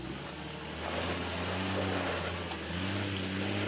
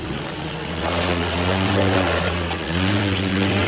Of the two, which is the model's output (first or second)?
second